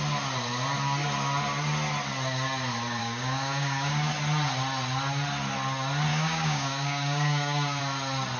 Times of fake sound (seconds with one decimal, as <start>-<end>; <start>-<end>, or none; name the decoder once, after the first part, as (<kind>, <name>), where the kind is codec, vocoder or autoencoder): 3.0-4.1 (codec, DAC); 6.1-7.8